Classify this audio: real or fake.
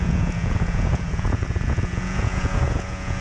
fake